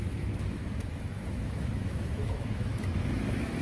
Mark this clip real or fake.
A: fake